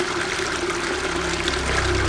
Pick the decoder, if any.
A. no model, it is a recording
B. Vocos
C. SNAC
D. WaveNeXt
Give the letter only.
A